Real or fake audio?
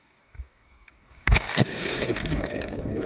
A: fake